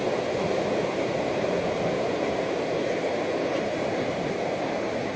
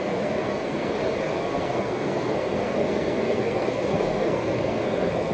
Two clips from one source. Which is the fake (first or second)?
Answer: second